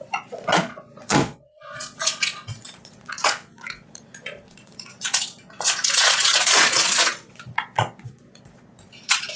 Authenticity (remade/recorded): remade